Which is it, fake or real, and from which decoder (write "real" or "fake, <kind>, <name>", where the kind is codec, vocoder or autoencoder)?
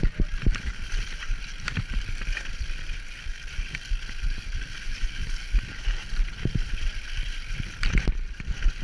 fake, vocoder, BigVGAN v2